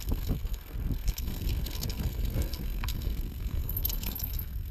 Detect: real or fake fake